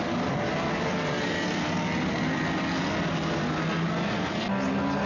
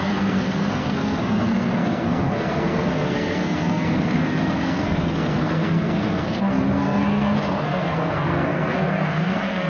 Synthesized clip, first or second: second